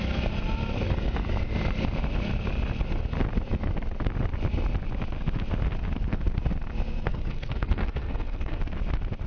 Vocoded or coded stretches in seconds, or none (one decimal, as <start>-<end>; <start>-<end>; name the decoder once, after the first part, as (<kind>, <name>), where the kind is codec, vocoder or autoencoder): 7.1-8.6 (codec, SNAC)